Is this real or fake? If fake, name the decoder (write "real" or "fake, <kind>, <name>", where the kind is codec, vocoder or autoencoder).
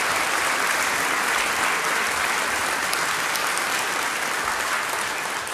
real